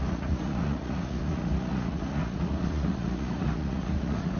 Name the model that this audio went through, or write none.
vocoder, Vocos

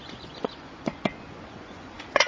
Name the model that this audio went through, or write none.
vocoder, Vocos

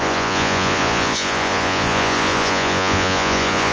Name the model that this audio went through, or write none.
vocoder, Vocos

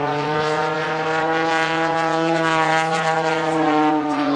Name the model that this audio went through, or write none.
vocoder, Vocos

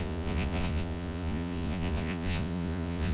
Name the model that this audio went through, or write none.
vocoder, Vocos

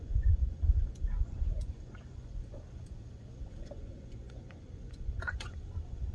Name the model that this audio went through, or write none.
vocoder, Vocos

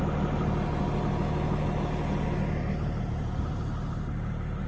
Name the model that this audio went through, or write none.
none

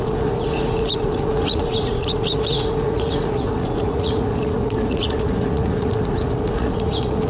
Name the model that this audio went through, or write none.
vocoder, Vocos